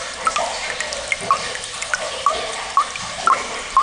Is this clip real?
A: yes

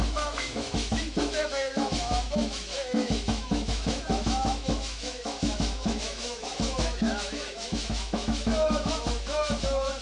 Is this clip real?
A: no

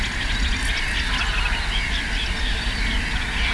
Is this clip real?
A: yes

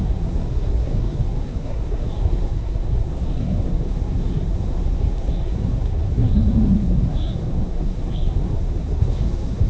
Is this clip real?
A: no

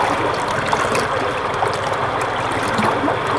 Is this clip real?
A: no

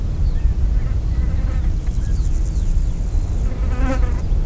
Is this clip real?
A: yes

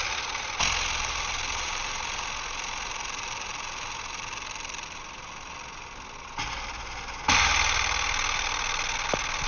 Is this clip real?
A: yes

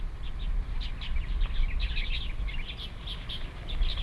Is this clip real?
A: yes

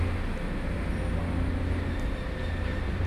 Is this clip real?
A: yes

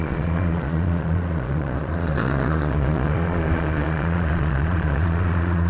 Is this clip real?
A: no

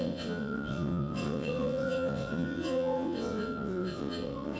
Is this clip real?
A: no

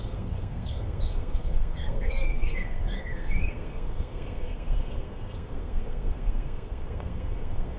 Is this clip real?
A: no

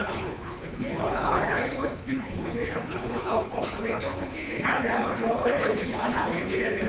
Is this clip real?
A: no